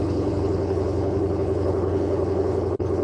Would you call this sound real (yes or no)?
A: no